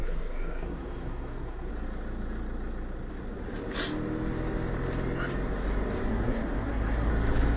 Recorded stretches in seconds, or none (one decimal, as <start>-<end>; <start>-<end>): 1.7-6.1; 7.1-7.6